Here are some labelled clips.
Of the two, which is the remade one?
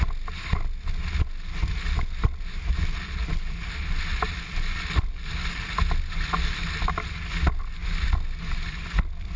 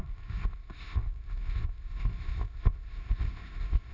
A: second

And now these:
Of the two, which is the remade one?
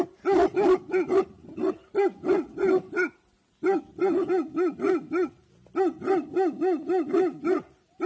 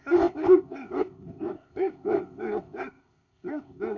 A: second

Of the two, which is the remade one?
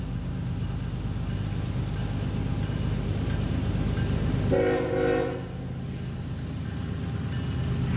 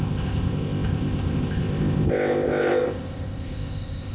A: second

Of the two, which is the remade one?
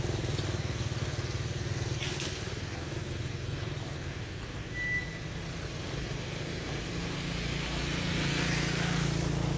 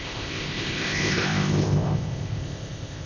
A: second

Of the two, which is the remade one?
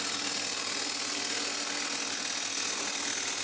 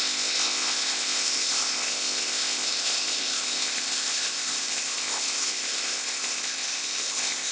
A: second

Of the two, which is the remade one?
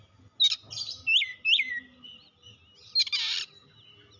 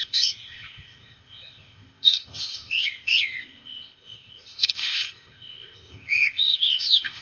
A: second